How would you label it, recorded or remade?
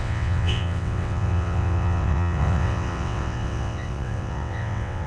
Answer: remade